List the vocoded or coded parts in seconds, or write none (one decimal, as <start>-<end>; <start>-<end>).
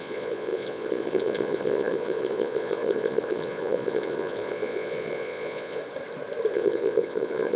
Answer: 0.0-5.8; 6.5-7.6